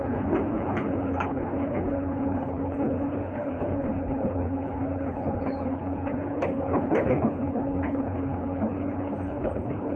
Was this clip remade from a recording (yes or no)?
yes